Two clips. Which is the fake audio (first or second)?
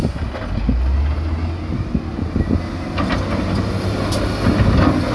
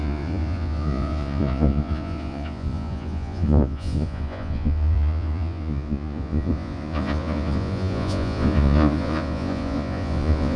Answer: second